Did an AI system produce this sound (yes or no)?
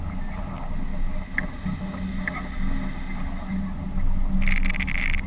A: no